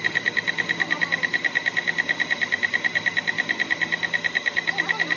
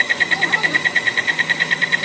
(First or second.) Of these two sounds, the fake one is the second